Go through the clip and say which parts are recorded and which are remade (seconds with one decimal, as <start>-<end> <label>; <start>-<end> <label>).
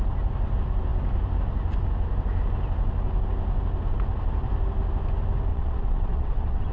0.0-5.5 recorded; 5.5-6.7 remade